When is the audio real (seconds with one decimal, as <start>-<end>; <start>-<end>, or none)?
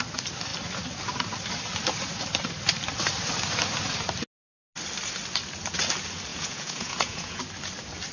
0.0-6.3; 7.4-8.1